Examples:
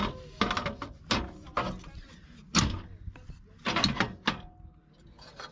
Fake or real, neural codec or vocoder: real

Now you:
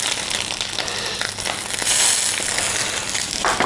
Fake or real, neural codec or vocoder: real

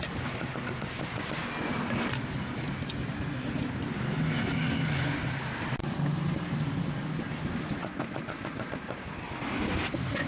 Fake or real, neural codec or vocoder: real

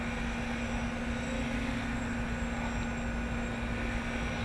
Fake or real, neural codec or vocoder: real